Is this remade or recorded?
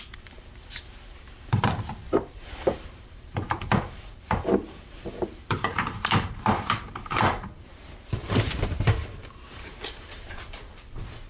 remade